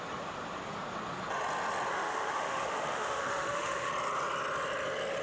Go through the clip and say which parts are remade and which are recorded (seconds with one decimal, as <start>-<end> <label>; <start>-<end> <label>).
0.0-1.9 recorded; 1.9-3.9 remade; 3.9-5.2 recorded